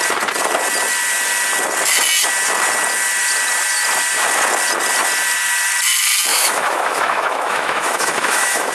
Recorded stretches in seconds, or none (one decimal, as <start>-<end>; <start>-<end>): 0.0-6.3